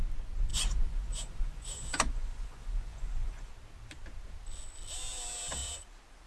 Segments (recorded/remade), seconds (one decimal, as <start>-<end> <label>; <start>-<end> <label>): 0.0-0.5 recorded; 0.5-3.5 remade; 3.5-6.3 recorded

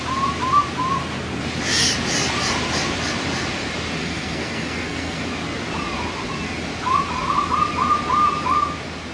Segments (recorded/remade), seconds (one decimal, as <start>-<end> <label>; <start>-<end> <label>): 0.0-4.0 recorded; 4.0-5.3 remade; 5.3-9.1 recorded

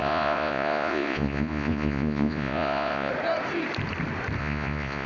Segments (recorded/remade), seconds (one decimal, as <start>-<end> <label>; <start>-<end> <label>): 0.0-3.1 remade; 3.1-4.4 recorded; 4.4-5.1 remade

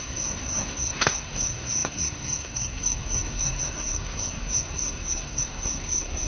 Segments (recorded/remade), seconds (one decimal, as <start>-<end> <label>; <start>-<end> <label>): 0.0-6.3 remade

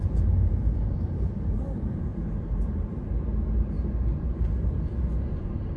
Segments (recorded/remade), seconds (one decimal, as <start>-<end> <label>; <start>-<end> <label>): 0.0-5.8 remade

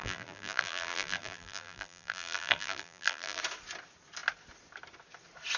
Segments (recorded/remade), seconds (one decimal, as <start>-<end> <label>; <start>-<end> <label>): 0.0-3.4 remade; 3.4-5.6 recorded

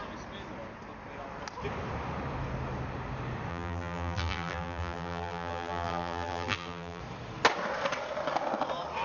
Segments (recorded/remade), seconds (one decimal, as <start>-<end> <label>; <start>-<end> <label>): 0.0-3.5 recorded; 3.5-7.0 remade; 7.0-9.0 recorded

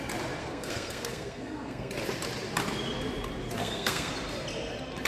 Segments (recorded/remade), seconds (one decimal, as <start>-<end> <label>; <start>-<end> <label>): 0.0-0.4 recorded; 0.4-1.9 remade; 1.9-3.6 recorded; 3.6-4.1 remade; 4.1-5.1 recorded